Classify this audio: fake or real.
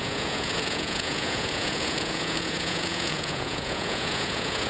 fake